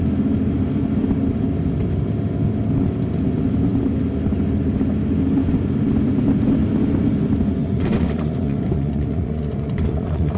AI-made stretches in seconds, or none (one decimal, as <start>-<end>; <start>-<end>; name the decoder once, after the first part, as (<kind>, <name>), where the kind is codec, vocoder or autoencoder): 7.6-10.4 (vocoder, Vocos)